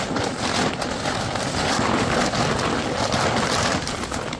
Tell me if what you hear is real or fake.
real